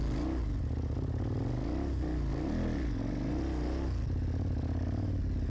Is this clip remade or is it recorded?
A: recorded